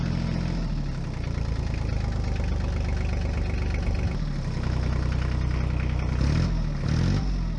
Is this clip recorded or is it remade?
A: recorded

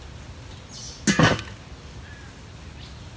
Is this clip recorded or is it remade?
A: recorded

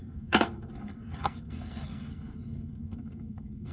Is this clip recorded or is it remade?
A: remade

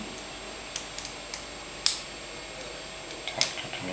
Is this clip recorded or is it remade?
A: recorded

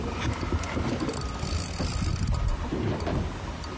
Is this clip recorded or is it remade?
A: recorded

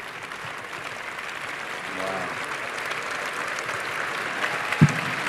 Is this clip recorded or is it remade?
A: recorded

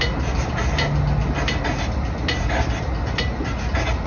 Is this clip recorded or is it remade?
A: recorded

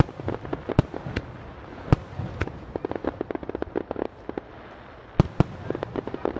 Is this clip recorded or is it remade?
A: recorded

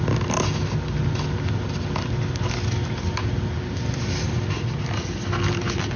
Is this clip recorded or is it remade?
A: recorded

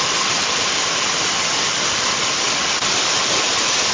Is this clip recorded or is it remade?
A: recorded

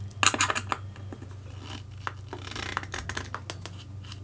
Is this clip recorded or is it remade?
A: recorded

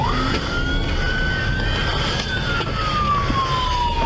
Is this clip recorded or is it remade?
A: recorded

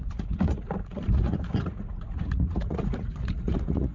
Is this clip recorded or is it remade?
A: remade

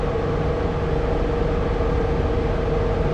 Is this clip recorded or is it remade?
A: recorded